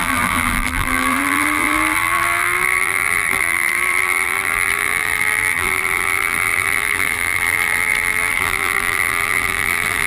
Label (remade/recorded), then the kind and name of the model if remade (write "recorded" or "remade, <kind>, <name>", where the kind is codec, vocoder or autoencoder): remade, vocoder, BigVGAN v2